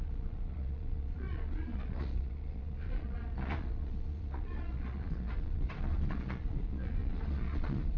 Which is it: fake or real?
fake